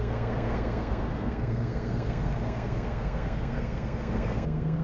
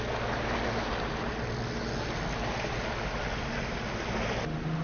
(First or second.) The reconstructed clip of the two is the first